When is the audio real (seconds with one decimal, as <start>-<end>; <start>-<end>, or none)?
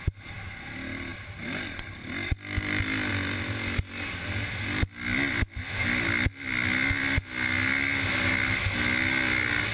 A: 0.0-9.7